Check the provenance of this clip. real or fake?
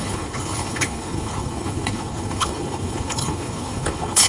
fake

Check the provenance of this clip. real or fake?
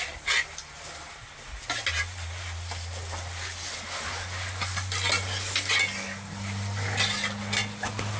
real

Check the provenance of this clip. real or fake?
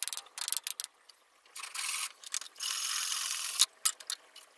real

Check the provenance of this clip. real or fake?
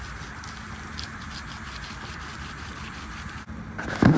real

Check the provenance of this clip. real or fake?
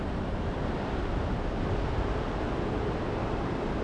real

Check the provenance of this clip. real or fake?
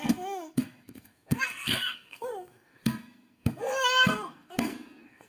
fake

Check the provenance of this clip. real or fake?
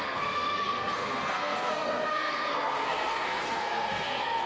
fake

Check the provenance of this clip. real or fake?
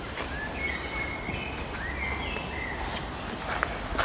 real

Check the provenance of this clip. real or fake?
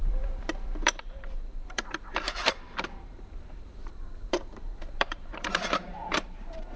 fake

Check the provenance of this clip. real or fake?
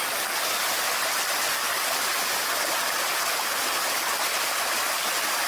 real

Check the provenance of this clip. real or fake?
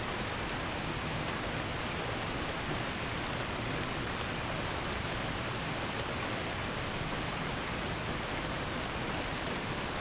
real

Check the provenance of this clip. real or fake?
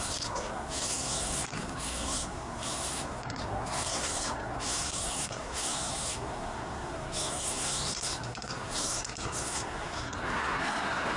fake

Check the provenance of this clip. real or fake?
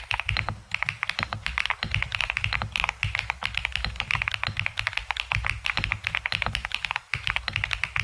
real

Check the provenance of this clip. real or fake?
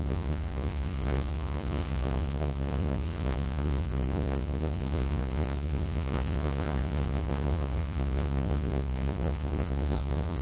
fake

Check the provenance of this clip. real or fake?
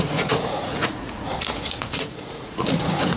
fake